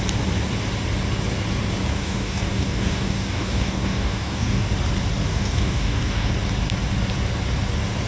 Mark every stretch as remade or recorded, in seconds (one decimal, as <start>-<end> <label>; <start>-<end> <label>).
0.0-1.9 recorded; 1.9-4.7 remade; 4.7-5.3 recorded; 5.3-6.3 remade; 6.3-8.1 recorded